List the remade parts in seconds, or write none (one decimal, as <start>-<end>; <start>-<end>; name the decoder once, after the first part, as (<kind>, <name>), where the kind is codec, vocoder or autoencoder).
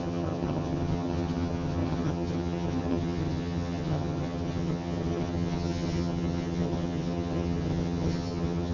0.0-8.7 (vocoder, HiFi-GAN)